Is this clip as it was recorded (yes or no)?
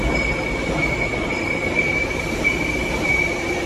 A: yes